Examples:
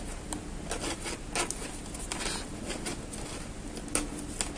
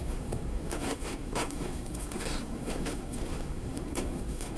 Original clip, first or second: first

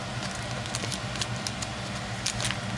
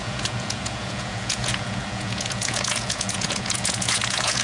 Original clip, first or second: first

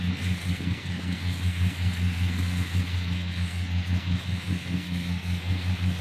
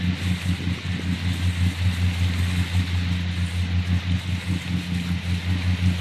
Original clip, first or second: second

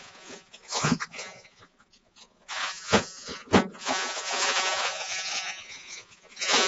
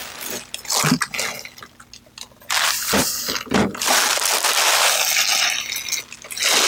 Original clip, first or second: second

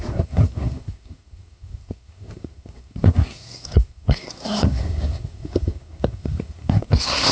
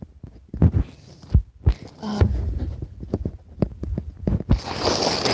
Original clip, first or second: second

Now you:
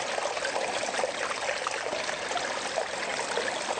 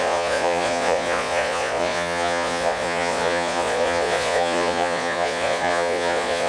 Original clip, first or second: first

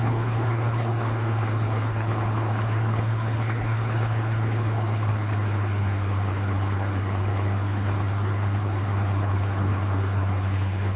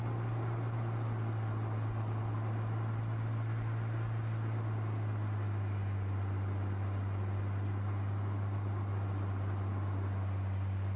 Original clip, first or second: second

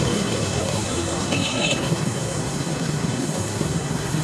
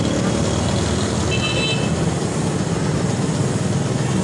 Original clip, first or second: second